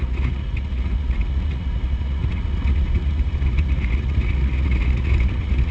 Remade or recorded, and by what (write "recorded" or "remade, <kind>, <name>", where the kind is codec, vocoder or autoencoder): remade, vocoder, Vocos